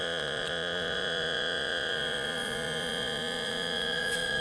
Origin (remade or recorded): remade